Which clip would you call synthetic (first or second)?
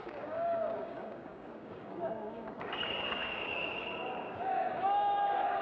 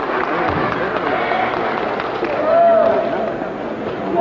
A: first